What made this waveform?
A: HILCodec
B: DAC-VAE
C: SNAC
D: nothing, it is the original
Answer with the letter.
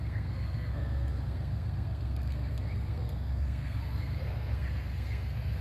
C